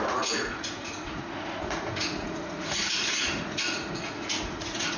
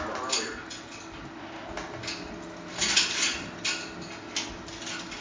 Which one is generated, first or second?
first